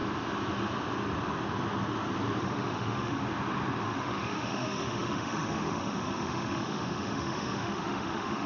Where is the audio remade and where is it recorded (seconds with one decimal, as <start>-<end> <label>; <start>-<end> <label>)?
0.0-2.4 recorded; 2.4-3.2 remade; 3.2-3.8 recorded; 3.8-8.5 remade